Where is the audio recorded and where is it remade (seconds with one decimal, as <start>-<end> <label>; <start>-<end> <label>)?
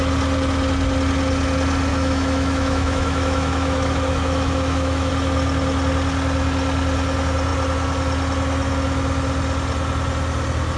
0.0-1.9 recorded; 1.9-5.1 remade; 5.1-10.8 recorded